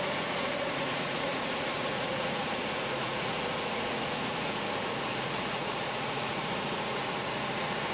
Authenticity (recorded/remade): remade